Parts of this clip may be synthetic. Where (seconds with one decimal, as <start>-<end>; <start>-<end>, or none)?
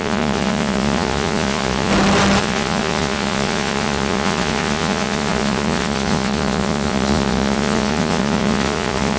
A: 0.0-1.9; 2.4-9.2